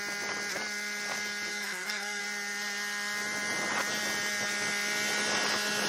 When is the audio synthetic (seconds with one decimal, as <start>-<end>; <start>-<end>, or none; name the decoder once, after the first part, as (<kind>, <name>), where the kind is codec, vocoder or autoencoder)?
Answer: 1.5-2.2 (codec, SNAC)

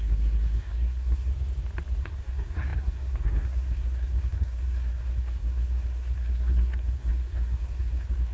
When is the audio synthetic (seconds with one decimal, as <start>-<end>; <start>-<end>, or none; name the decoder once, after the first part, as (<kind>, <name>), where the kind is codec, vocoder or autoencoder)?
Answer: 0.0-1.3 (codec, SNAC); 2.0-8.3

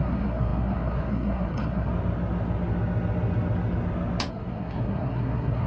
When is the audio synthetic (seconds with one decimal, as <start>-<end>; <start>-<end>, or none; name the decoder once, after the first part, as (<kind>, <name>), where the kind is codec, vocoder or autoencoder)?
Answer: 0.0-1.9 (codec, SNAC); 4.3-5.7

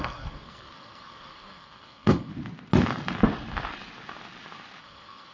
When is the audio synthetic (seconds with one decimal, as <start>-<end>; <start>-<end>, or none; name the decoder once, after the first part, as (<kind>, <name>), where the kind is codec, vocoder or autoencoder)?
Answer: 0.0-2.3 (codec, SNAC); 4.8-5.3

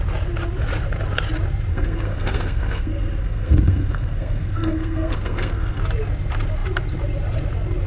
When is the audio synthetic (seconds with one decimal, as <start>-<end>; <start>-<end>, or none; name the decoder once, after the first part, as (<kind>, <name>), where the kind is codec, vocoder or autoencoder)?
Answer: 1.7-5.8 (codec, SNAC)